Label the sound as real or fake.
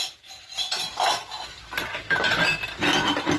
real